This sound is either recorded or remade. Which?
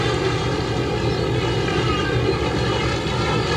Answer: recorded